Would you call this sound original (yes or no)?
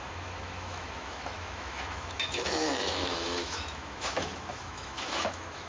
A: no